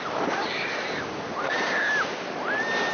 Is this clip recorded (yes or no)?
yes